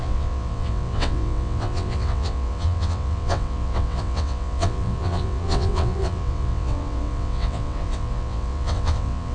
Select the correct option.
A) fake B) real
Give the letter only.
A